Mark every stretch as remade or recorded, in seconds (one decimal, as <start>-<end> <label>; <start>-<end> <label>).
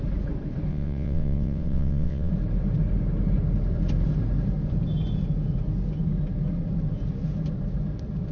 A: 0.0-0.7 recorded; 0.7-2.3 remade; 2.3-8.3 recorded